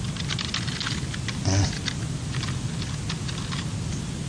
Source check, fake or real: real